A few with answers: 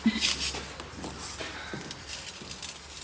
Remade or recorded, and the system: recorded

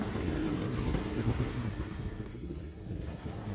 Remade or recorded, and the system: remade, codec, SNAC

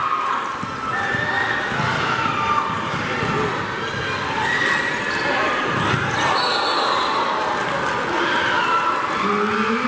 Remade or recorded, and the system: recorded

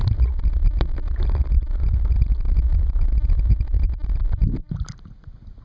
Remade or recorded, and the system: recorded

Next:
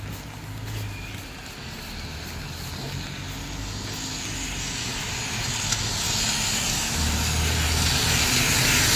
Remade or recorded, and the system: recorded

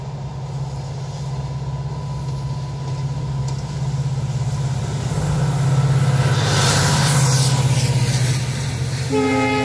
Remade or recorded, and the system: recorded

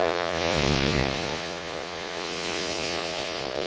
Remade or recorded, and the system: remade, vocoder, Vocos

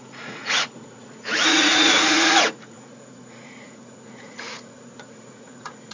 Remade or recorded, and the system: remade, vocoder, Vocos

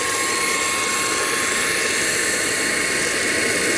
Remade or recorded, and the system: recorded